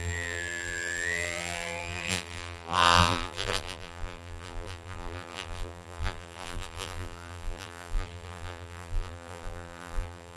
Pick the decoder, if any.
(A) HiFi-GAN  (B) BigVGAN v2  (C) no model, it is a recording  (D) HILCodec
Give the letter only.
B